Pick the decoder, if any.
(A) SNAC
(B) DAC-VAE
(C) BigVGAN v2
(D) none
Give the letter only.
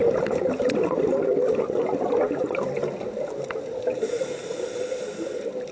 D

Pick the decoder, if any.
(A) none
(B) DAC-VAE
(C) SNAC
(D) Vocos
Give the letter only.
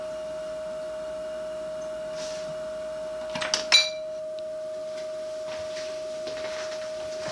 A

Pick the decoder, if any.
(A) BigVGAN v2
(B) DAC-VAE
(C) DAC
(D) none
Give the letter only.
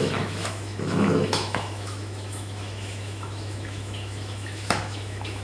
B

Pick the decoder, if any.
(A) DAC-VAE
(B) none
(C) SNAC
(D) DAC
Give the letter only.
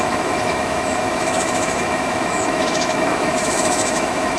A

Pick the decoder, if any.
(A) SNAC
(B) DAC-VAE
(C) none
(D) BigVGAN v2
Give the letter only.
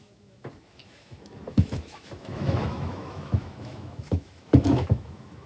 B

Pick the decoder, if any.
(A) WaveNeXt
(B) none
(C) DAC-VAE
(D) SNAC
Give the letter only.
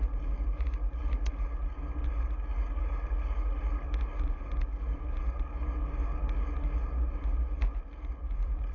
B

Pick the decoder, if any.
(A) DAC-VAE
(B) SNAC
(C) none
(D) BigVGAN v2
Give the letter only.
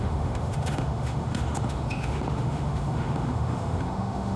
A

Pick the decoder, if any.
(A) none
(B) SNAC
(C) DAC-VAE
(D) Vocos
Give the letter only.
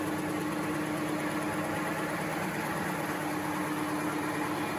A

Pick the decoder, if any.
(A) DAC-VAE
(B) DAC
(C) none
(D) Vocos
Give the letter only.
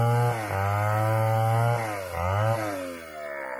C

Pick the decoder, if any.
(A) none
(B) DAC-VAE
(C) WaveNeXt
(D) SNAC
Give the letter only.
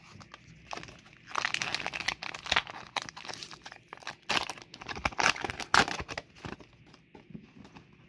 A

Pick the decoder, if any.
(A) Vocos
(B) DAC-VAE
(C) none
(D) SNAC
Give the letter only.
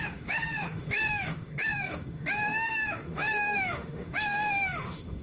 B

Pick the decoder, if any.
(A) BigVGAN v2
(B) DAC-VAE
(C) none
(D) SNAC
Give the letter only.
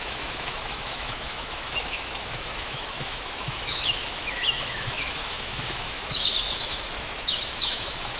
B